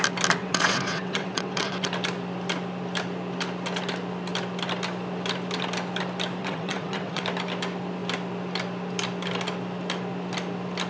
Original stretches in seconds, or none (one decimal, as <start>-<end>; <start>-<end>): 0.0-0.4; 1.9-6.4; 7.2-10.9